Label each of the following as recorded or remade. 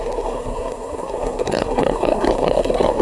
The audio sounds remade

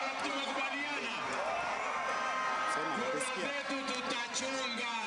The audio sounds recorded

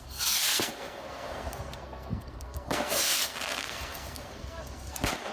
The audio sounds remade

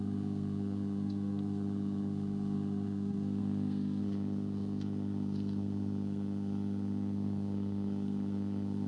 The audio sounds remade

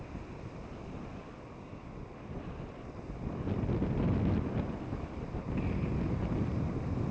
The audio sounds recorded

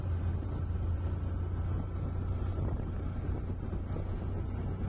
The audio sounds recorded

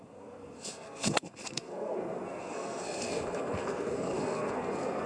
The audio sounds remade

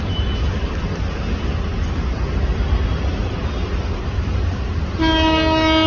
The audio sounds recorded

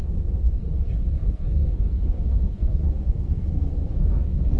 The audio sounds remade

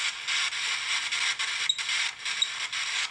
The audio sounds recorded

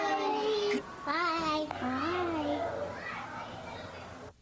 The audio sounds recorded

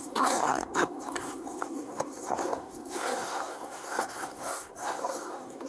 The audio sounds remade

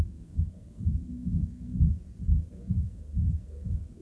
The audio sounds remade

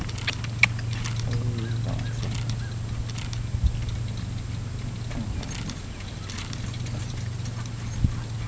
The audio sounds recorded